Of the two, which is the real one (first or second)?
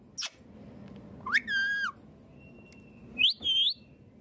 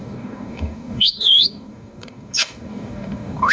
first